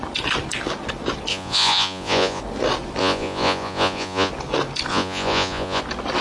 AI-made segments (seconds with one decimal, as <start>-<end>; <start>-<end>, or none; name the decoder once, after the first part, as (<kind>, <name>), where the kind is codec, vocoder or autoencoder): 1.3-2.4 (vocoder, Vocos); 3.0-4.3; 4.9-5.8